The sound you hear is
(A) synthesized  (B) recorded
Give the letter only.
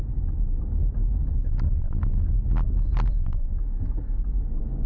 B